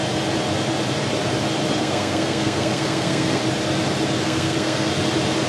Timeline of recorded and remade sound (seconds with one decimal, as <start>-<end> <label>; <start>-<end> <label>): 0.0-1.8 recorded; 1.8-3.4 remade; 3.4-4.2 recorded; 4.2-4.9 remade; 4.9-5.5 recorded